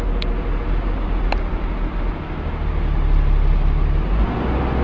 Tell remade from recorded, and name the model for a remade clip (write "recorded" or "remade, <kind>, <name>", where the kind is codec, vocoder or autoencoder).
recorded